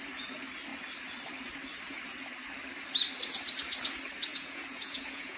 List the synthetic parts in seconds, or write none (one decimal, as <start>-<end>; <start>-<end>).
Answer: 4.3-5.4